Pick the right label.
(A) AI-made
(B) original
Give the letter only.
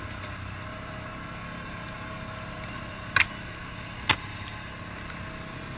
B